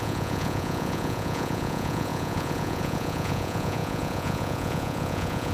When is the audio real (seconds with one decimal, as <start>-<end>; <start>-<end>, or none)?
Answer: none